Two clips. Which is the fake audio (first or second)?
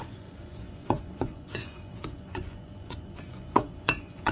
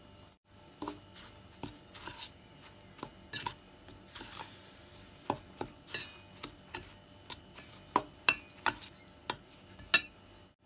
first